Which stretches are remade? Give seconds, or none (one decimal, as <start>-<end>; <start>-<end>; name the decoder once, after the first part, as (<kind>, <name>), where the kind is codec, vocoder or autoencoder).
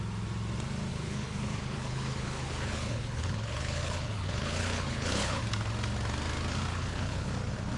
0.9-5.4 (codec, HILCodec); 6.7-7.3